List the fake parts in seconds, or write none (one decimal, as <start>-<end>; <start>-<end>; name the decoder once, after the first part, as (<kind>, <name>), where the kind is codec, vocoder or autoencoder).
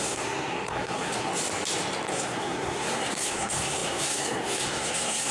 0.0-1.3 (codec, SNAC); 2.1-5.3